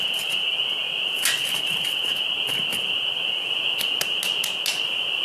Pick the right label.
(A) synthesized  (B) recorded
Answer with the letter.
B